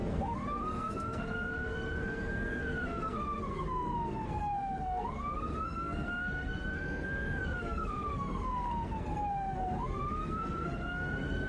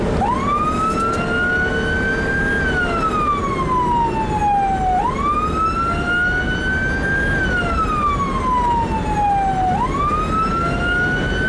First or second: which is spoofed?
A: first